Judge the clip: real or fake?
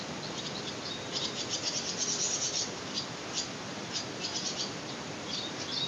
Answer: real